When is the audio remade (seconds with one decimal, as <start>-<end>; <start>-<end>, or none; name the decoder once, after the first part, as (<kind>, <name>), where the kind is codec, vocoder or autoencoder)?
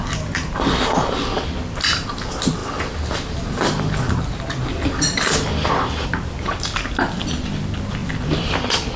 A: 8.0-8.5 (vocoder, BigVGAN v2)